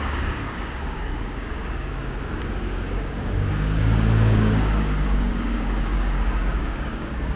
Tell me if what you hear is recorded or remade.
remade